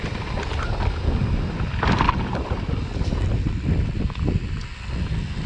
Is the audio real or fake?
real